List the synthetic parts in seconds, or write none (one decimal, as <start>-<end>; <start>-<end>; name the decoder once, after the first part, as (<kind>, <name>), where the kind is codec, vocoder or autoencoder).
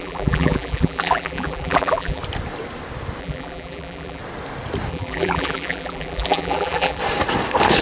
0.0-2.2 (vocoder, BigVGAN v2); 3.2-4.2; 4.9-7.0